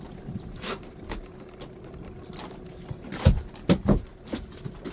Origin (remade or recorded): recorded